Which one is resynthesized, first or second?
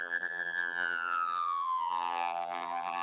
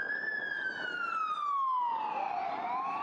first